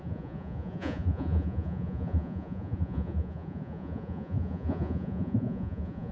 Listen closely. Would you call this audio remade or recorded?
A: remade